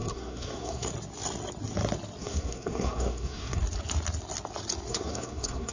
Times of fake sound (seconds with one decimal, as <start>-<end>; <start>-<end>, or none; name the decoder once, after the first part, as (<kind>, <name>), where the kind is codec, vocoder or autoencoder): 0.0-0.9 (codec, SNAC); 2.2-3.6; 4.9-5.7